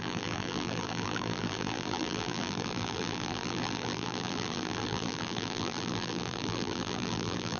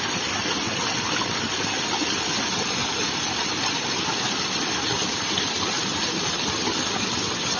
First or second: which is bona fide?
second